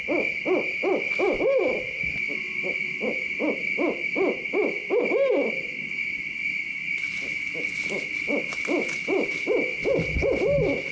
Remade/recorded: recorded